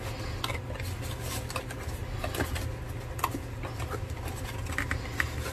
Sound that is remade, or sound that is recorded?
recorded